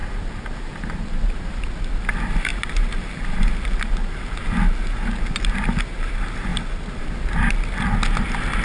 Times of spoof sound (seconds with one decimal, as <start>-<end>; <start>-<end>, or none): none